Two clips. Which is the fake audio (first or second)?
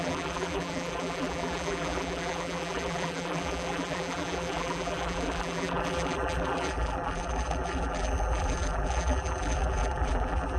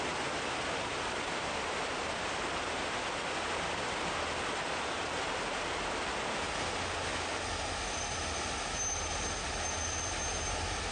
first